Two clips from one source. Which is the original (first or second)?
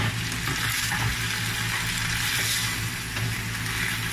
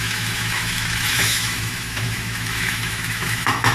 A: first